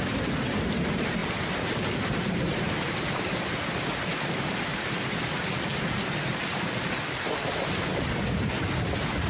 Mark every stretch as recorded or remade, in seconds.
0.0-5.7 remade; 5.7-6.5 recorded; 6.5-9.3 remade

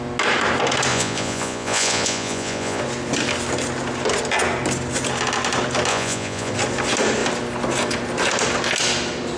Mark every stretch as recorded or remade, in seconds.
0.0-0.9 recorded; 0.9-2.8 remade; 2.8-5.9 recorded; 5.9-6.5 remade; 6.5-9.4 recorded